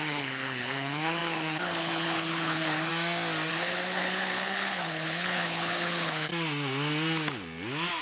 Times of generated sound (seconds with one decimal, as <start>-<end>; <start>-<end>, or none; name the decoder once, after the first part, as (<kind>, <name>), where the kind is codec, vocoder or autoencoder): 0.0-2.9 (codec, HILCodec); 3.5-6.3